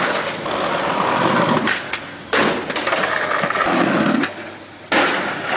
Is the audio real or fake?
real